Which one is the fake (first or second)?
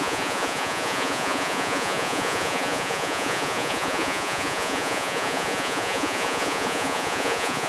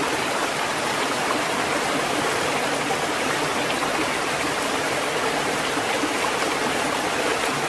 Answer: first